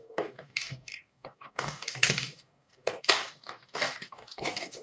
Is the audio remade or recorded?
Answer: remade